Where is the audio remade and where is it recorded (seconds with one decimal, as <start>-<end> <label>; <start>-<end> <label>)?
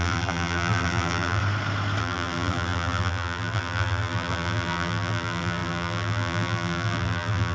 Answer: 0.0-1.4 remade; 1.4-2.0 recorded; 2.0-7.5 remade